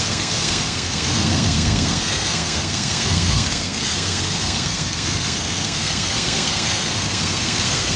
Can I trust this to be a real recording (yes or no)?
no